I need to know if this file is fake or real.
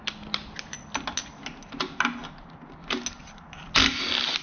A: real